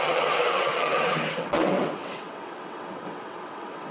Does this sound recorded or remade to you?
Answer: remade